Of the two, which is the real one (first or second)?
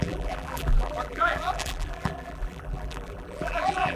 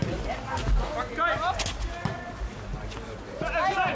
second